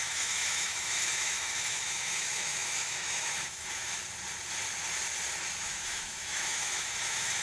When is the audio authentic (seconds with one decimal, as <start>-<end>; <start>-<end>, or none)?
4.0-5.6